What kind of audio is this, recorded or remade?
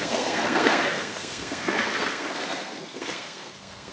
remade